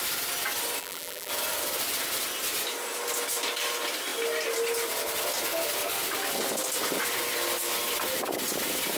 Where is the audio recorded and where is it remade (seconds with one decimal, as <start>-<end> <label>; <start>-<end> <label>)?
0.0-0.8 recorded; 0.8-1.3 remade; 1.3-9.0 recorded